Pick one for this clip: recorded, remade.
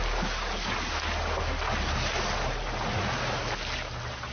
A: recorded